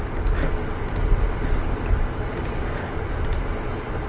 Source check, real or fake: real